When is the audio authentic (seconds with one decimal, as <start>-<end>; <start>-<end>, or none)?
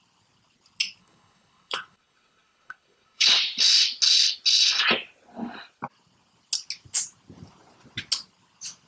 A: 0.0-1.0; 3.3-8.9